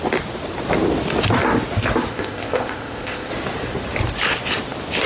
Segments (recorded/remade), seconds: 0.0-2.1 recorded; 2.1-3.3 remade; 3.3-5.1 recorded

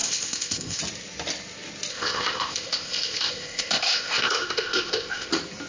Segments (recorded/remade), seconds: 0.0-0.8 remade; 0.8-1.9 recorded; 1.9-5.3 remade; 5.3-5.7 recorded

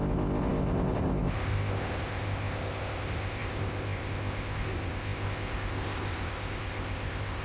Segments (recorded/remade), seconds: 0.0-7.4 remade

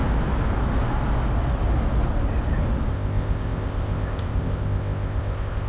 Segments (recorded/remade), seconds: 0.0-2.9 recorded; 2.9-5.7 remade

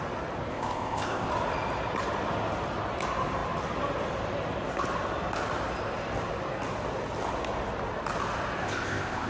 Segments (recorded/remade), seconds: 0.0-0.5 recorded; 0.5-1.3 remade; 1.3-8.6 recorded; 8.6-9.3 remade

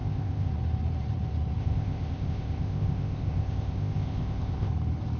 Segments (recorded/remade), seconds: 0.0-0.5 remade; 0.5-1.6 recorded; 1.6-4.7 remade; 4.7-5.2 recorded

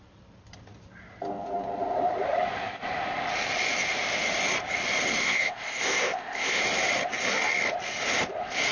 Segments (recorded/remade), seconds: 0.0-5.2 recorded; 5.2-6.6 remade; 6.6-8.7 recorded

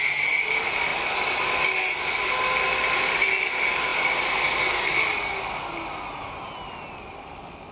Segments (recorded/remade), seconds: 0.0-7.7 recorded